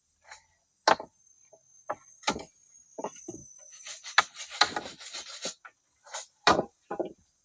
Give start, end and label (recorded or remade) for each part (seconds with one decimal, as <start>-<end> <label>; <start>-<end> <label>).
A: 0.0-7.4 recorded